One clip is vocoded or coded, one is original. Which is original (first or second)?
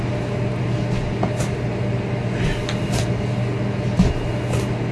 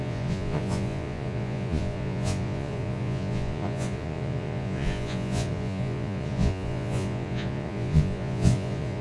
first